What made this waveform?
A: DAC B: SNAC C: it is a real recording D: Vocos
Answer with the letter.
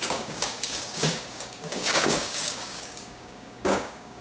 A